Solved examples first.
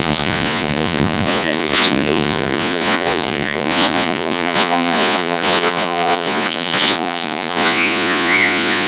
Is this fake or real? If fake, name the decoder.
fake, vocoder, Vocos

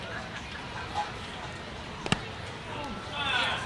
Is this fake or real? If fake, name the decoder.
real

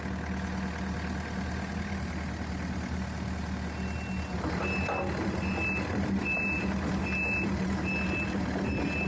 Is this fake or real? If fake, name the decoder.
real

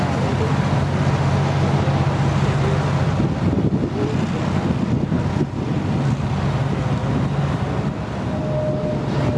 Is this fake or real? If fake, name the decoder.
real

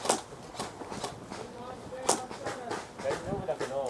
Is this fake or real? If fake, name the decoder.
real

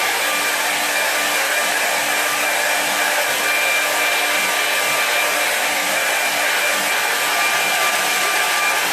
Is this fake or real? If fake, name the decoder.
real